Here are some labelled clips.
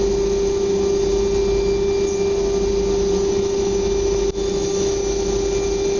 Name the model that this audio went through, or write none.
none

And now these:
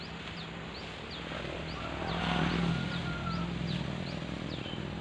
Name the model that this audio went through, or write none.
none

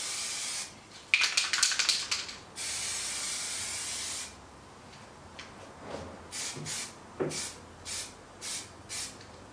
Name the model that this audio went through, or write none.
none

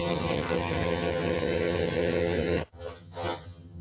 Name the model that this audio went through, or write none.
vocoder, HiFi-GAN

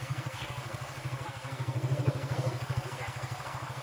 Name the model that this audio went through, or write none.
codec, SNAC